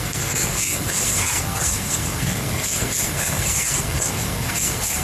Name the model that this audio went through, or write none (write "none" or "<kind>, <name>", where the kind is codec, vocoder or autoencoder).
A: codec, SNAC